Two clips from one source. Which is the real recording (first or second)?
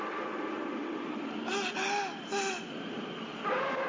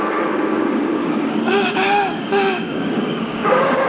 first